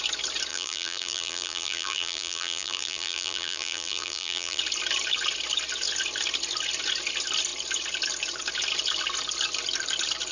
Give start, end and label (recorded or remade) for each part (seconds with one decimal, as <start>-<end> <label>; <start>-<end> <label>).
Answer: 0.0-0.5 recorded; 0.5-4.6 remade; 4.6-10.3 recorded